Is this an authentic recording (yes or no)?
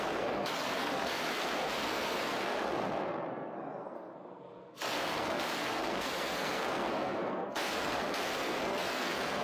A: no